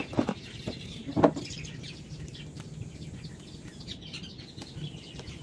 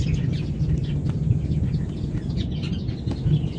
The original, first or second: second